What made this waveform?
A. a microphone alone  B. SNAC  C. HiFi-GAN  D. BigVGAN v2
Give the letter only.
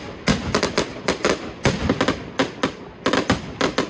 A